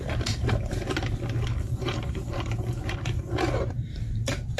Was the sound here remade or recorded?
remade